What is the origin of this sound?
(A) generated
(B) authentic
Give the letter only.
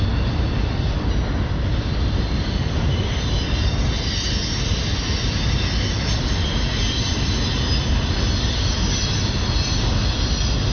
B